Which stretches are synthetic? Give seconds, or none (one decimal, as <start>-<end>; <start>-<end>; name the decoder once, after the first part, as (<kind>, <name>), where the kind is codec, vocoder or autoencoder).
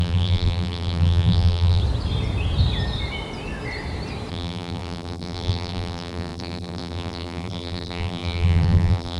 0.0-1.8 (vocoder, BigVGAN v2); 4.3-9.2